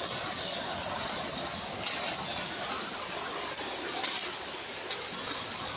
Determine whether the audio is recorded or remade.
recorded